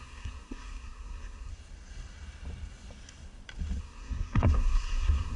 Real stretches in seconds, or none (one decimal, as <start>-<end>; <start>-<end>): 1.5-3.8